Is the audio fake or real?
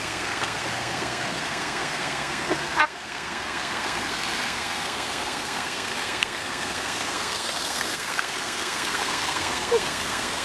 fake